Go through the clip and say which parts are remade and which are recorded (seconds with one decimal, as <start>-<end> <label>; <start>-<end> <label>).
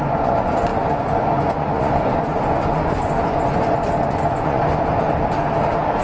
0.0-4.6 remade; 4.6-6.0 recorded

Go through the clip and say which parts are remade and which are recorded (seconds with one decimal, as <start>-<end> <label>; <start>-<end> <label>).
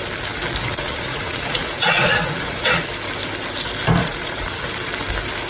0.0-0.7 recorded; 0.7-2.8 remade; 2.8-4.0 recorded; 4.0-4.6 remade; 4.6-5.5 recorded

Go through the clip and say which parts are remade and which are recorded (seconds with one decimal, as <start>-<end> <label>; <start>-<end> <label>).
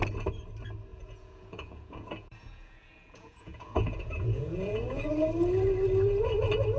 0.0-0.9 recorded; 0.9-5.0 remade; 5.0-6.8 recorded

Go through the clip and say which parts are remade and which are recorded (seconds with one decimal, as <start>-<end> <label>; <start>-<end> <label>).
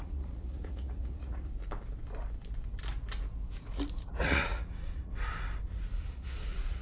0.0-1.5 remade; 1.5-3.9 recorded; 3.9-5.1 remade; 5.1-5.6 recorded; 5.6-6.8 remade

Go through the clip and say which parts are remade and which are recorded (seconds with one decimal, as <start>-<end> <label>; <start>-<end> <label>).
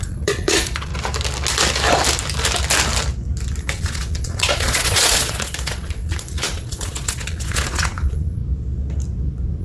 0.0-0.9 remade; 0.9-3.6 recorded; 3.6-8.4 remade; 8.4-9.6 recorded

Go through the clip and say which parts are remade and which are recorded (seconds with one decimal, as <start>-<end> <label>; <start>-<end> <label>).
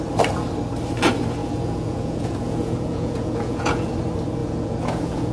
0.0-1.4 recorded; 1.4-3.9 remade; 3.9-4.4 recorded; 4.4-5.3 remade